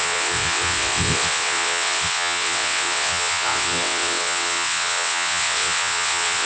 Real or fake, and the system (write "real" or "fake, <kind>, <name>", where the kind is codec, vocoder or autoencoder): fake, vocoder, WaveNeXt